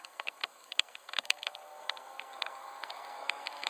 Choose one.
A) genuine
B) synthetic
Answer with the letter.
B